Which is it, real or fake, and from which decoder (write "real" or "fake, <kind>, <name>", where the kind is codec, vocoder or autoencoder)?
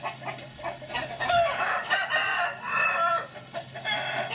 real